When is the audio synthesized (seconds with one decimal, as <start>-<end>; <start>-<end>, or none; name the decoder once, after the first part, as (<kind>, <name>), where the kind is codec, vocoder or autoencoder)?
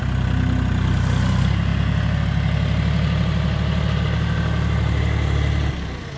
none